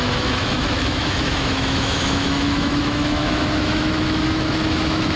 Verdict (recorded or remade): remade